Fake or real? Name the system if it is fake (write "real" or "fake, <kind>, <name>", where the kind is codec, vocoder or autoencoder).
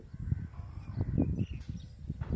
real